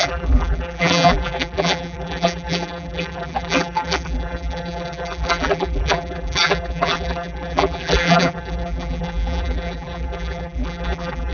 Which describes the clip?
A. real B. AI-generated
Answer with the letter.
B